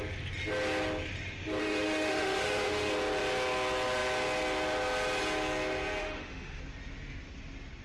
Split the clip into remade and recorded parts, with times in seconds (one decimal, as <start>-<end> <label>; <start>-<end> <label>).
0.0-1.6 recorded; 1.6-2.9 remade; 2.9-6.0 recorded; 6.0-6.6 remade; 6.6-7.8 recorded